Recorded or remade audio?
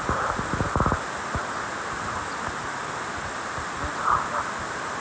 recorded